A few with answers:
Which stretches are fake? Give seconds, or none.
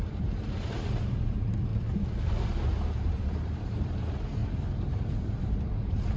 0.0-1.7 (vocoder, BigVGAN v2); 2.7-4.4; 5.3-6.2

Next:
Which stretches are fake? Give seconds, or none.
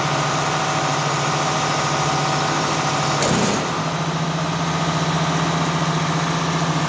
none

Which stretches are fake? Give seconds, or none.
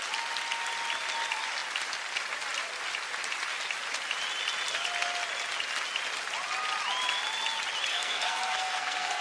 7.9-9.2 (codec, SNAC)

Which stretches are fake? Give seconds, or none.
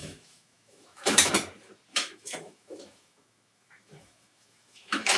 0.0-1.3 (autoencoder, DAC-VAE); 1.9-5.2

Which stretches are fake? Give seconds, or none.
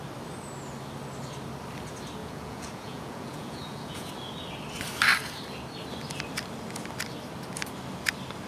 2.2-4.1 (vocoder, Vocos)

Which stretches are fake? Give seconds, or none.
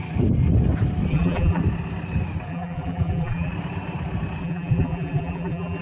1.1-1.6 (vocoder, BigVGAN v2); 2.5-3.5; 4.4-5.8